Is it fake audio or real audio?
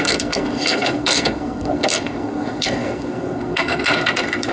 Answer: fake